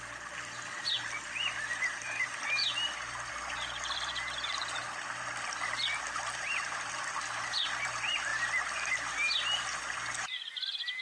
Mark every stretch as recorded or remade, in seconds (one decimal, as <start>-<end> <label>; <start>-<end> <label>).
0.0-11.0 remade